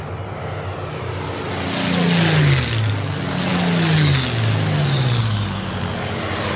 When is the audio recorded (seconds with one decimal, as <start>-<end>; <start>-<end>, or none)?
0.0-6.6